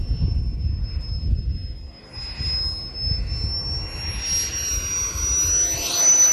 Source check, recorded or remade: recorded